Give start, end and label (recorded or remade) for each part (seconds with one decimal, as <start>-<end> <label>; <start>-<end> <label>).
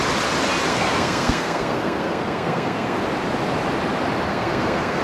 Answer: 0.0-0.7 recorded; 0.7-3.0 remade; 3.0-4.3 recorded; 4.3-5.0 remade